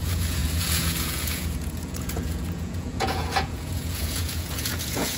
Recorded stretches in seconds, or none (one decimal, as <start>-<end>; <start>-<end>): none